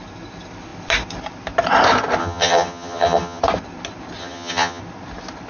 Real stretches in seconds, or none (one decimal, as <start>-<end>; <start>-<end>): 0.0-2.2; 3.4-4.2; 4.8-5.5